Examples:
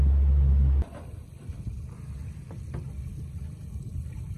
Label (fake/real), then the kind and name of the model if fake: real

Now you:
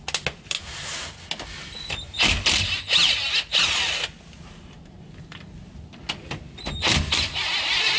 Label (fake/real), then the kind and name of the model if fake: real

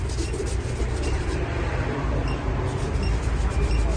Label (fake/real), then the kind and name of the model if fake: fake, vocoder, BigVGAN v2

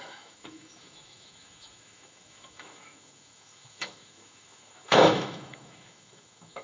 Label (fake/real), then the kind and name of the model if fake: fake, autoencoder, DAC-VAE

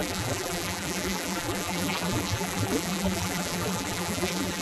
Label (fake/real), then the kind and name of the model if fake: fake, vocoder, BigVGAN v2